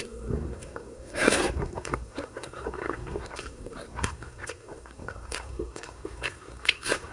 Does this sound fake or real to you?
fake